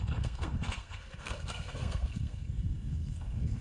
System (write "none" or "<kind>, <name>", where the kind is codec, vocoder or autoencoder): codec, SNAC